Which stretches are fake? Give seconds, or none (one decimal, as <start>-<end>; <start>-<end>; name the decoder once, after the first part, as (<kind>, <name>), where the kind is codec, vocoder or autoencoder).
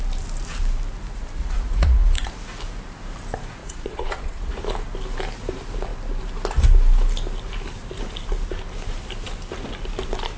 1.4-2.3 (vocoder, Vocos); 3.6-4.6